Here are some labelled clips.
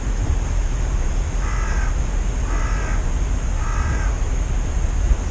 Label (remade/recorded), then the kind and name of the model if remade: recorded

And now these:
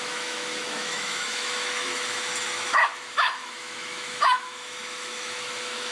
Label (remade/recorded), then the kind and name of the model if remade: remade, autoencoder, DAC-VAE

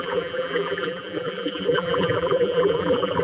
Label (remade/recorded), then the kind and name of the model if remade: remade, vocoder, BigVGAN v2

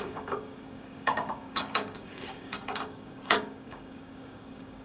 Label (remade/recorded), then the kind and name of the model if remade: remade, codec, DAC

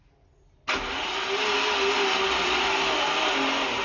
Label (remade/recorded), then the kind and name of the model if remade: recorded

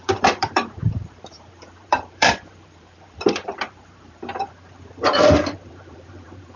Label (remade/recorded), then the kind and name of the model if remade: remade, vocoder, BigVGAN v2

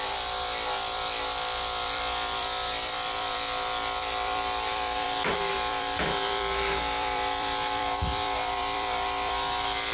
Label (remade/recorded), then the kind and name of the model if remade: remade, vocoder, BigVGAN v2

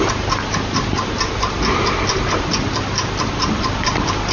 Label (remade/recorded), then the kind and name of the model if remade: recorded